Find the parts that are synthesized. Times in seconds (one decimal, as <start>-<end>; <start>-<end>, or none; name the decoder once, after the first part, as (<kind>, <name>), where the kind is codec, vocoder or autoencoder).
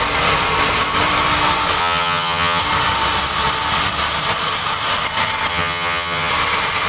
1.8-2.6 (vocoder, HiFi-GAN); 5.5-6.3